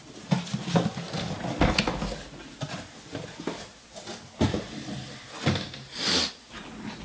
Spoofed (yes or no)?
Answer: no